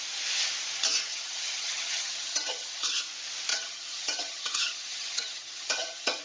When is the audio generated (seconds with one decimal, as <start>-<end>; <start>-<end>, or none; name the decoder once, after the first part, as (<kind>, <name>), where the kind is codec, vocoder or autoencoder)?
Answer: 1.1-3.0 (vocoder, HiFi-GAN); 3.5-6.2